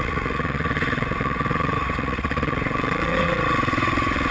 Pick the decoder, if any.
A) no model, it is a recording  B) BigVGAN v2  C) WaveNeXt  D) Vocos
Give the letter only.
C